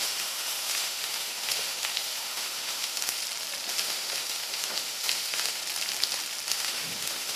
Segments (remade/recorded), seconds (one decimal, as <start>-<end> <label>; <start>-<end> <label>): 0.0-3.2 remade; 3.2-3.7 recorded; 3.7-5.6 remade; 5.6-6.5 recorded; 6.5-7.4 remade